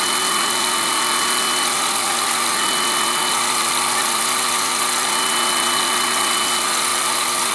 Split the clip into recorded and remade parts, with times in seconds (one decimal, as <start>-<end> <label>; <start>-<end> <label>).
0.0-7.5 recorded